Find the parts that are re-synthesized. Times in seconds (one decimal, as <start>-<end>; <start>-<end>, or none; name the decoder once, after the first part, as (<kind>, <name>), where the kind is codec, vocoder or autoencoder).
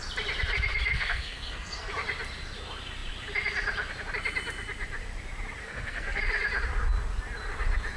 0.9-1.9 (codec, SNAC); 5.6-6.2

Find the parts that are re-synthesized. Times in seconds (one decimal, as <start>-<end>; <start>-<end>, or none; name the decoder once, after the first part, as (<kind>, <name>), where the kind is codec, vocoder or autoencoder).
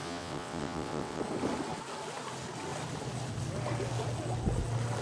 0.0-1.2 (vocoder, WaveNeXt)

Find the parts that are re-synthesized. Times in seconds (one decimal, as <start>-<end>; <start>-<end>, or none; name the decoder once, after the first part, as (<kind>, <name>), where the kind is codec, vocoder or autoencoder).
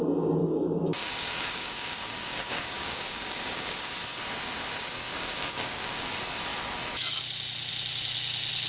0.4-3.9 (codec, DAC); 5.1-6.1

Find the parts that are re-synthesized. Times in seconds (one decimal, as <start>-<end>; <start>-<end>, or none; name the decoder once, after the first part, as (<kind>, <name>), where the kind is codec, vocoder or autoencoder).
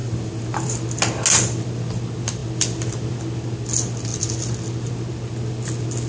0.0-0.8 (vocoder, BigVGAN v2)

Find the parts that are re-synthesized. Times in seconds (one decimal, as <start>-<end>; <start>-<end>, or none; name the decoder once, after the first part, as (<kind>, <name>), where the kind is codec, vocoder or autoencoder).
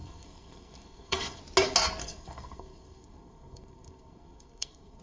0.0-1.4 (codec, SNAC); 2.0-5.0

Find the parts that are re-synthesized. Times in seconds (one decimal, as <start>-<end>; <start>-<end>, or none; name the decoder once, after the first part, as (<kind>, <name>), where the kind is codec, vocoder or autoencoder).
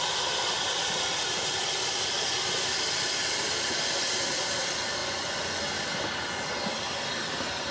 5.0-5.6 (vocoder, Vocos)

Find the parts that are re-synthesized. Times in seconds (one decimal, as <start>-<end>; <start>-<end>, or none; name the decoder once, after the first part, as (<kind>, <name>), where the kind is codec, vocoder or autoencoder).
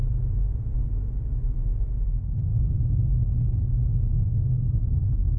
none